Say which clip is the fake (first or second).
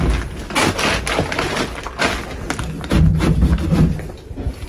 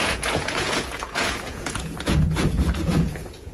second